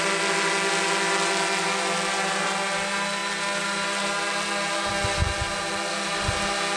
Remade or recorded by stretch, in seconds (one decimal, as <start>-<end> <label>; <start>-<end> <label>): 0.0-6.8 recorded